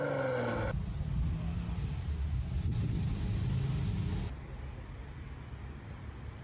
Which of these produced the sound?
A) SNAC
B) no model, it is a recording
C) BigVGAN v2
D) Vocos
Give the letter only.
B